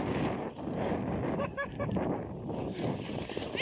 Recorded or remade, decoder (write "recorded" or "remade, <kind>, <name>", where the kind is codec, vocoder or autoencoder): recorded